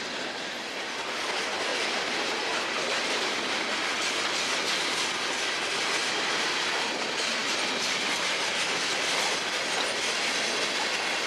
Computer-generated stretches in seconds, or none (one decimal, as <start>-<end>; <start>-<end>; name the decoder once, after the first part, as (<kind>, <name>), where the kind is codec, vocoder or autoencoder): 1.7-3.4 (vocoder, BigVGAN v2); 6.0-6.6